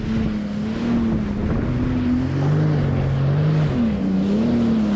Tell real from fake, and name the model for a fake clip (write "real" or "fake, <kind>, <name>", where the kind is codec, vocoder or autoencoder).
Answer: real